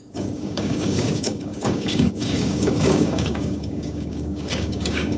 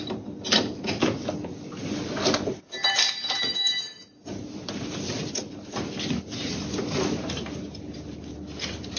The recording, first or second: second